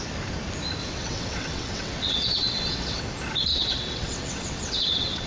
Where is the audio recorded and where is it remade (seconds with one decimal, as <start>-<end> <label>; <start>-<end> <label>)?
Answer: 0.0-0.8 recorded; 0.8-3.0 remade; 3.0-3.5 recorded; 3.5-5.3 remade